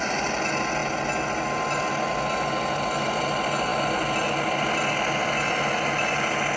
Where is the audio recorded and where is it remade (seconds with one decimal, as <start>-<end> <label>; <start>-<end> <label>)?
0.0-6.6 recorded